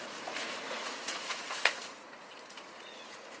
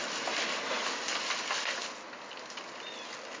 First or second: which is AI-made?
first